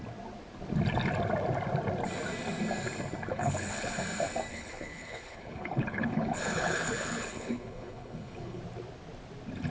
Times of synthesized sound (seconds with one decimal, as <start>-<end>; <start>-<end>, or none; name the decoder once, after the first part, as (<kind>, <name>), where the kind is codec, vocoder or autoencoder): 3.3-3.9 (codec, HILCodec); 4.5-8.6